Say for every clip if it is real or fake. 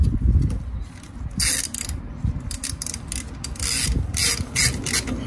real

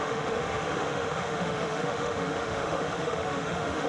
fake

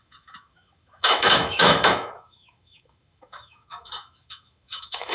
fake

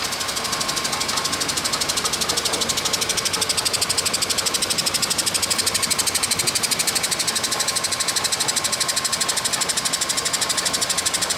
real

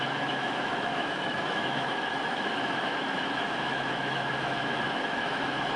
fake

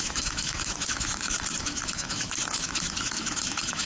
fake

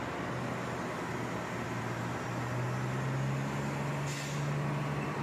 real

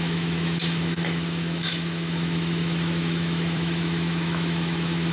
fake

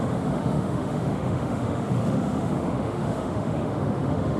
fake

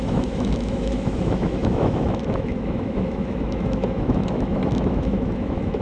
fake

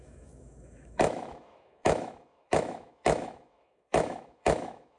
fake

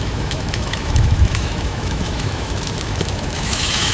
fake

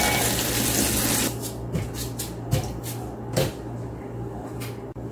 real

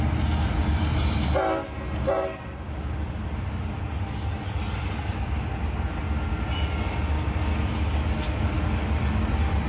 real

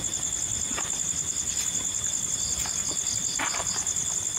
real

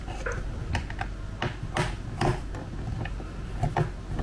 real